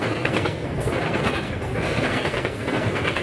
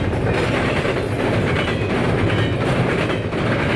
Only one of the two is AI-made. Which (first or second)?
first